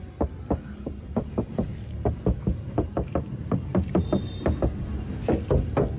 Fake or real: real